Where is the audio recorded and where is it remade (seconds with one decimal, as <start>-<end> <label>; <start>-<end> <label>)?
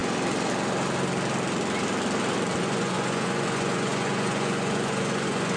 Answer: 0.0-2.6 recorded; 2.6-5.6 remade